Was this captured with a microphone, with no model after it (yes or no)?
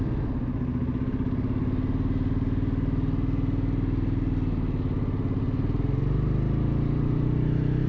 yes